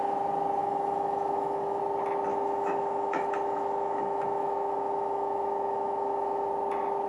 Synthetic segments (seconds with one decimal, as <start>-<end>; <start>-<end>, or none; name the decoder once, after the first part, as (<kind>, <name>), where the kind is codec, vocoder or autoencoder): 0.6-1.8 (autoencoder, DAC-VAE); 2.3-6.5